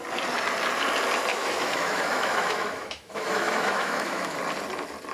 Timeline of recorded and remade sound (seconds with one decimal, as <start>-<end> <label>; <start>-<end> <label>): 0.0-1.3 recorded; 1.3-4.4 remade; 4.4-5.1 recorded